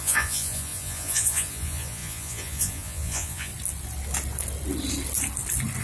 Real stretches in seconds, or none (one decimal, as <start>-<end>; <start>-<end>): 3.5-5.8